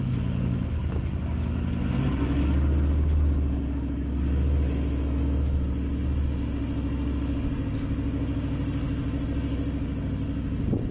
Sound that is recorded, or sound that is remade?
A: recorded